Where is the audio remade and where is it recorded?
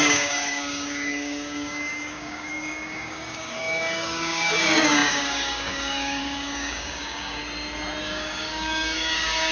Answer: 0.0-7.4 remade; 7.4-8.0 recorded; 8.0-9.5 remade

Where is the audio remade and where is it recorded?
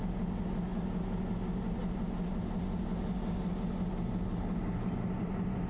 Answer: 0.0-5.7 recorded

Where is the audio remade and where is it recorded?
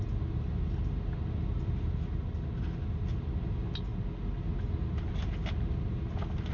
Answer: 0.0-6.5 recorded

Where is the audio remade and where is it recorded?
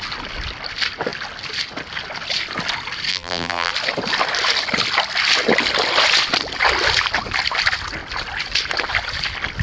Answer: 0.0-3.1 recorded; 3.1-3.7 remade; 3.7-9.6 recorded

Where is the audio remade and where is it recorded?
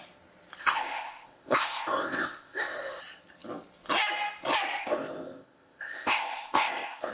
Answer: 0.0-0.6 recorded; 0.6-3.0 remade; 3.0-4.8 recorded; 4.8-7.1 remade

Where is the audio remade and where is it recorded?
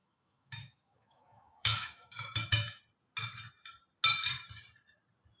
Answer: 0.0-2.8 remade; 2.8-5.4 recorded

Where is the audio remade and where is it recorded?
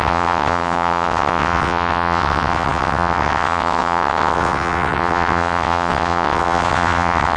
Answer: 0.0-7.4 remade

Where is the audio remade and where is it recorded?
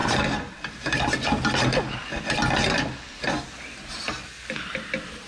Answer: 0.0-5.3 recorded